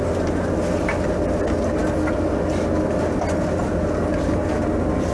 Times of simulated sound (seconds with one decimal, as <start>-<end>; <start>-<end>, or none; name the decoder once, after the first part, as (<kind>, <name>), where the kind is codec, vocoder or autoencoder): none